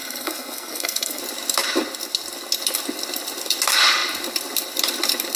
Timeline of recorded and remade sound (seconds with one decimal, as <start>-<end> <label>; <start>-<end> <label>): 0.0-1.2 remade; 1.2-5.4 recorded

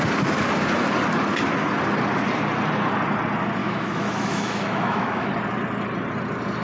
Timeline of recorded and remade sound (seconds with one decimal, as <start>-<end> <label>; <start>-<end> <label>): 0.0-3.6 recorded; 3.6-5.3 remade; 5.3-6.6 recorded

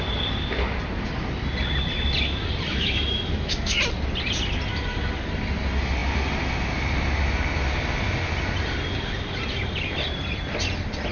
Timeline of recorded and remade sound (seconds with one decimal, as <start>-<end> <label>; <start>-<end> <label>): 0.0-2.7 recorded; 2.7-3.8 remade; 3.8-11.1 recorded

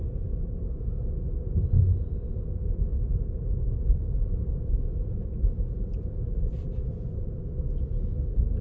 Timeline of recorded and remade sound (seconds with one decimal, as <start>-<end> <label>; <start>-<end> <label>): 0.0-5.0 recorded; 5.0-7.4 remade; 7.4-8.6 recorded